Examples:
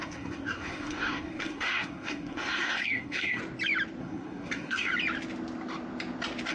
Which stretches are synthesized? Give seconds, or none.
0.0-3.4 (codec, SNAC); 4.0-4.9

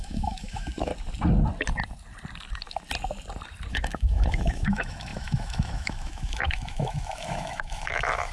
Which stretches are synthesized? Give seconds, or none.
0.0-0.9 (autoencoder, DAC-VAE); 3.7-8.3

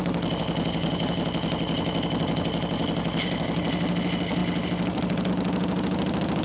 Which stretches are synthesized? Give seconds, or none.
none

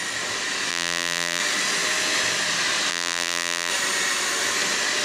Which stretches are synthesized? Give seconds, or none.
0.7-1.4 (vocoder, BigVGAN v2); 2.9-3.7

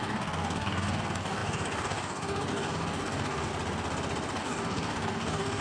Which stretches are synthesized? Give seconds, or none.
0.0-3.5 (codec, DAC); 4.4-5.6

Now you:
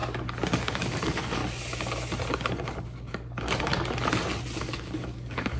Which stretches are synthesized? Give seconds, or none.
0.6-1.4 (codec, DAC); 2.5-3.7; 4.6-5.6